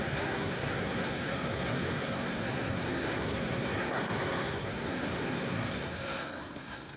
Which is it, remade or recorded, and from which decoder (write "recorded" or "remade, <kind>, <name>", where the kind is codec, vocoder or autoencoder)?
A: remade, codec, SNAC